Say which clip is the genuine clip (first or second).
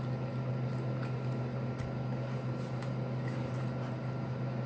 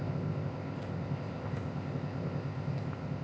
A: first